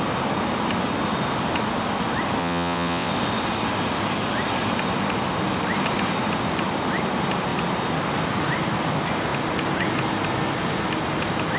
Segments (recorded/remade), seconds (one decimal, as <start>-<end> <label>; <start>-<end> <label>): 0.0-2.4 recorded; 2.4-3.1 remade; 3.1-11.6 recorded